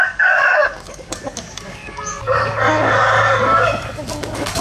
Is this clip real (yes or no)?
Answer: no